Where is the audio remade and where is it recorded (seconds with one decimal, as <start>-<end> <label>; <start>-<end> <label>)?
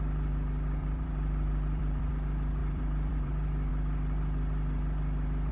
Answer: 0.0-0.8 recorded; 0.8-2.1 remade; 2.1-2.6 recorded; 2.6-3.3 remade; 3.3-5.5 recorded